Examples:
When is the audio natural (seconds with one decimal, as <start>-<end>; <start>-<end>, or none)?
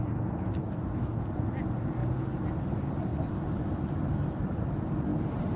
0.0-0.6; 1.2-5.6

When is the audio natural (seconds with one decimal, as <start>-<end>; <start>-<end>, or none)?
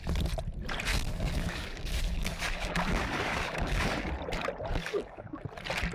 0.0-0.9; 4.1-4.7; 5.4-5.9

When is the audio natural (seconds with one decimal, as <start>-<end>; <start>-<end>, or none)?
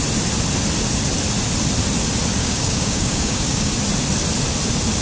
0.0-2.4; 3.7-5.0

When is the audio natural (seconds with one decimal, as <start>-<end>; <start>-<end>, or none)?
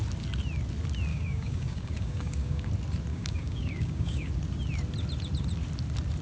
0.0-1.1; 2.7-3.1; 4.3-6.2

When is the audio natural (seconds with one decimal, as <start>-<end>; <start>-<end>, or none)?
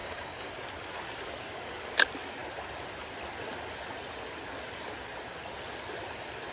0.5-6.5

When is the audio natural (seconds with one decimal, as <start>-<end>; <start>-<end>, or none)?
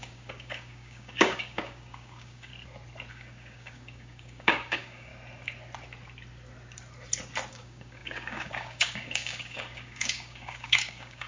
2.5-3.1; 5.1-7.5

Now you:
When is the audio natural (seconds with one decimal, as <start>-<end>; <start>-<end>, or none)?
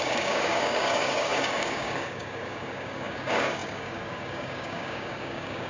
none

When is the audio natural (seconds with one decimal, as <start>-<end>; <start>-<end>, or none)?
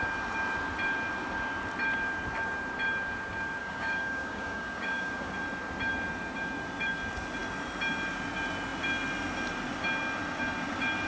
0.0-3.6; 5.3-11.1